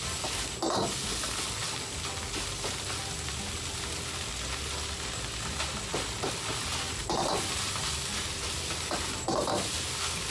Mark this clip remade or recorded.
recorded